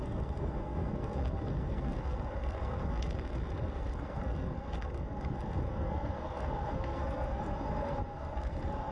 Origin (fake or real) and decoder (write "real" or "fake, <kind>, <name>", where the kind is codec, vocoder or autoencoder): fake, codec, SNAC